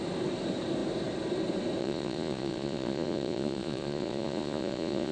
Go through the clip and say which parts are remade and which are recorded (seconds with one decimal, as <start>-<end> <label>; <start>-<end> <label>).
0.0-1.8 recorded; 1.8-5.1 remade